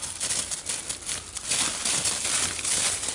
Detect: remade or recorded recorded